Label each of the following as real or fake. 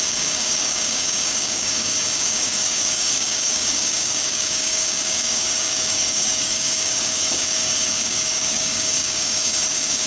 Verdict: fake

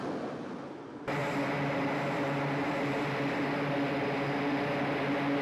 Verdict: real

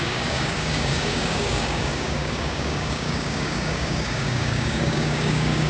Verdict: fake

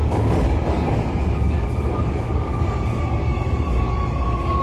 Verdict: fake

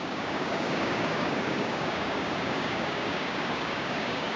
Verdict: fake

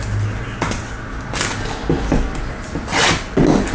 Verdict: real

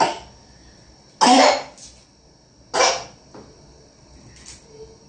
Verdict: real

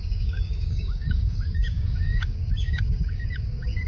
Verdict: fake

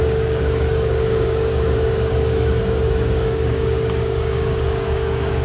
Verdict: fake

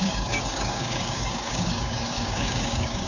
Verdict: fake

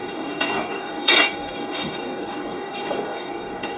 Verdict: fake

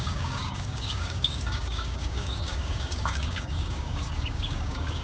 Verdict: fake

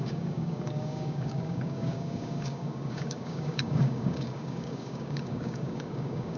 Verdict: fake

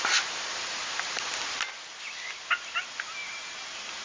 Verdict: real